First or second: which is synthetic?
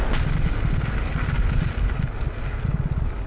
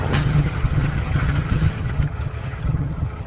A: second